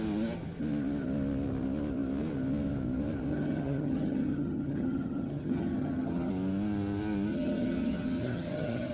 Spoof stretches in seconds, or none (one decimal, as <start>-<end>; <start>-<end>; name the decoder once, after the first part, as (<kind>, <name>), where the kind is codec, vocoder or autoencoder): 3.3-6.3 (vocoder, HiFi-GAN); 7.3-8.9